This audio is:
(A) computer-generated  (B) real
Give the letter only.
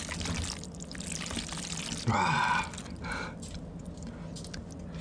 B